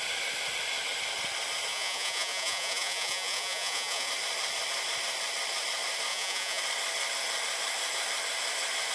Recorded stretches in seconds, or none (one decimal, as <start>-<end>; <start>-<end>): 0.0-1.7; 4.1-6.1; 6.6-8.9